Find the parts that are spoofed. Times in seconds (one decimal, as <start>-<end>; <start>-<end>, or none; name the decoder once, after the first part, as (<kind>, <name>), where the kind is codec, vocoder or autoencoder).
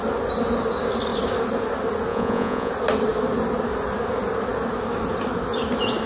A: 2.1-2.7 (vocoder, Vocos)